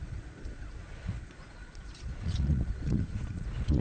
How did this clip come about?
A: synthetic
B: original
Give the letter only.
A